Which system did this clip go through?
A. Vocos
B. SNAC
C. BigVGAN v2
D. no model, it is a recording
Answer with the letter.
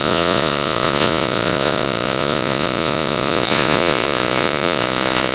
A